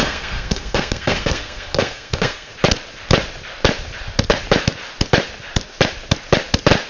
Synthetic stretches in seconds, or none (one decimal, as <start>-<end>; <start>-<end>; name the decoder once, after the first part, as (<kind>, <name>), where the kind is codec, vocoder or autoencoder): 0.0-2.5 (codec, SNAC)